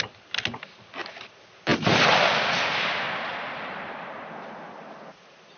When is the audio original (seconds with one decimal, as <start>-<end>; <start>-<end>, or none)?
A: 0.0-5.6